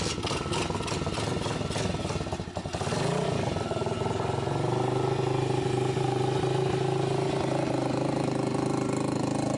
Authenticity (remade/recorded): recorded